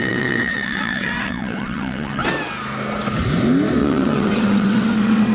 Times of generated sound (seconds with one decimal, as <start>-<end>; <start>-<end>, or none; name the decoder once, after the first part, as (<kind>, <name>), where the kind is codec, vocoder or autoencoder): 0.0-2.2 (vocoder, WaveNeXt); 3.8-5.3